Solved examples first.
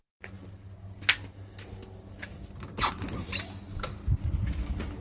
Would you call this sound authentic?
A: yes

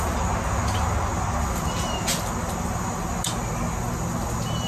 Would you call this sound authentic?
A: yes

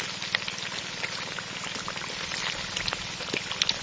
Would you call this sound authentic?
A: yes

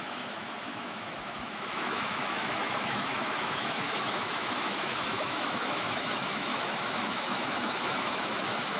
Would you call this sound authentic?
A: no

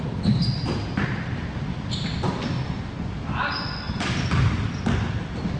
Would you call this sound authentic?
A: yes